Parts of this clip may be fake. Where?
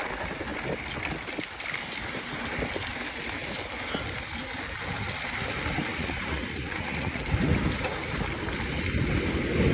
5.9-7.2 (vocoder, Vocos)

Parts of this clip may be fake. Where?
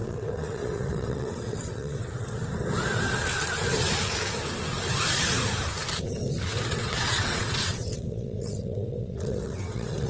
0.0-2.4 (vocoder, WaveNeXt); 6.7-10.1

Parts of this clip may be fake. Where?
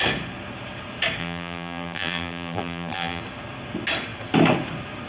1.2-3.2 (vocoder, BigVGAN v2)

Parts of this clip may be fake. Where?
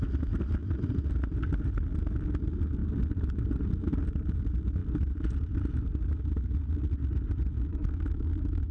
7.7-8.7 (autoencoder, DAC-VAE)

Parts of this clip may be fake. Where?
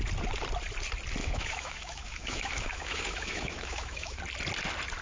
1.2-4.2 (autoencoder, DAC-VAE)